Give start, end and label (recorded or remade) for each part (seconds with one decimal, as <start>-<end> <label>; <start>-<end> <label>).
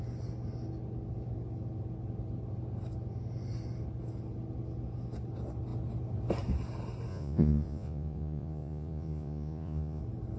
0.0-7.1 recorded; 7.1-10.0 remade; 10.0-10.4 recorded